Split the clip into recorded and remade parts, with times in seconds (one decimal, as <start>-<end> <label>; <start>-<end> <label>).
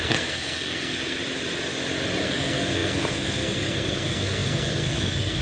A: 0.0-1.2 remade; 1.2-2.2 recorded; 2.2-5.4 remade